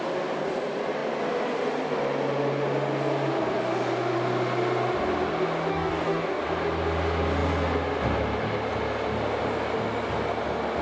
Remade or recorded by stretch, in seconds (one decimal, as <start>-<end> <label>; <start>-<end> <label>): 0.0-5.7 recorded; 5.7-6.4 remade; 6.4-10.8 recorded